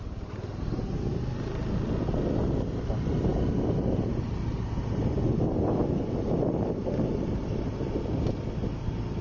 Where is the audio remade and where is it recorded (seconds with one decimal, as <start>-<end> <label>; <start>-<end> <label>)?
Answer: 0.0-9.2 recorded